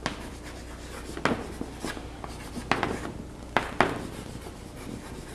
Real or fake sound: real